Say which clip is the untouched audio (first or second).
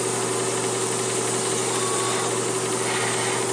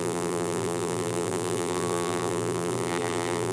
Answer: first